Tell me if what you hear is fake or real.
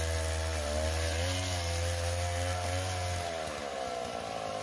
real